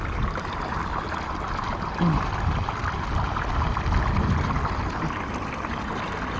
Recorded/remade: recorded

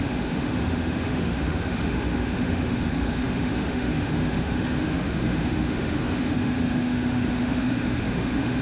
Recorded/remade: remade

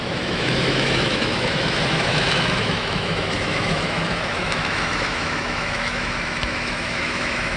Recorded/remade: remade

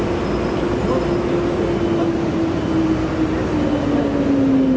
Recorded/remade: recorded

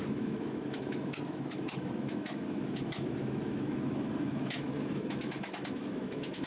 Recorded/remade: remade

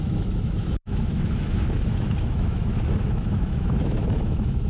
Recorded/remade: remade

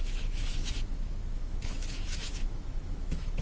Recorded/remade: remade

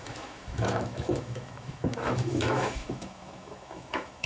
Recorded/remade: remade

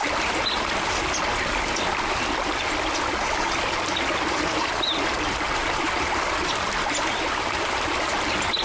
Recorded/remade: recorded